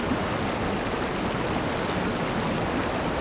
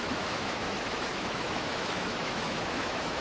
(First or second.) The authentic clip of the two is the first